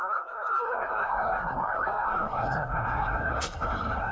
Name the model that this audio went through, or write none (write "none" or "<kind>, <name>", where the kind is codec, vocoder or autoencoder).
codec, SNAC